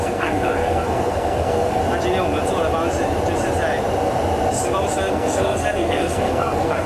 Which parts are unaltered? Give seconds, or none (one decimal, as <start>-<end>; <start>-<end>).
1.8-5.1